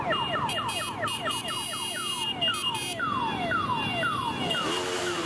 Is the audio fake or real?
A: real